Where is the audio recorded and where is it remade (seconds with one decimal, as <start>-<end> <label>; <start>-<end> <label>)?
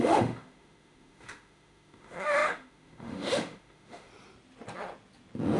0.0-4.1 remade; 4.1-5.6 recorded